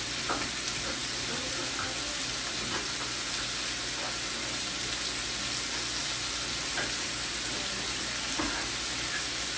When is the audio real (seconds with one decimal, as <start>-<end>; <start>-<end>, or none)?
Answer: 0.0-9.6